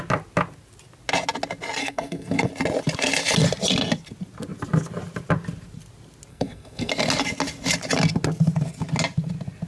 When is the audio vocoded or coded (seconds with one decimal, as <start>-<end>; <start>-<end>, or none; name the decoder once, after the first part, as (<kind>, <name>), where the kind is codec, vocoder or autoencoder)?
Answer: 1.8-2.5 (codec, SNAC); 6.3-6.9